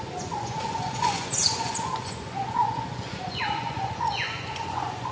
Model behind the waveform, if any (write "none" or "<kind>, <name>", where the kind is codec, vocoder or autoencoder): vocoder, Vocos